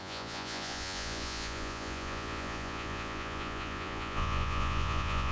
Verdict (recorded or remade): remade